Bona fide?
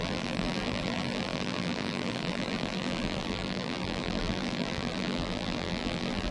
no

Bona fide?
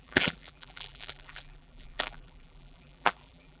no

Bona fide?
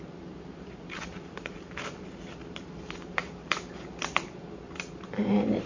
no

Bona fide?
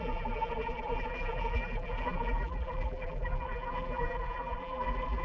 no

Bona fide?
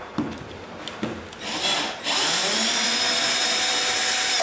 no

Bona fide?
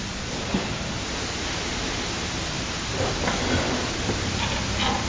yes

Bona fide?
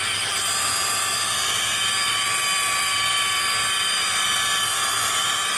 no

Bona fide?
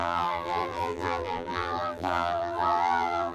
no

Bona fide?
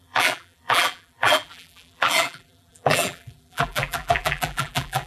no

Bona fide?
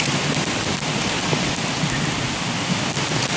yes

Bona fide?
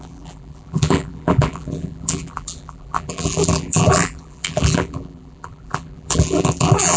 no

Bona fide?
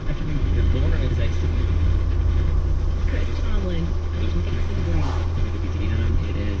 yes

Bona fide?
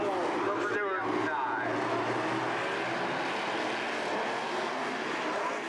yes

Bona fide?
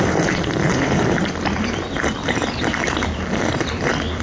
no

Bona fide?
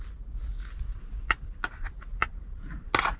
yes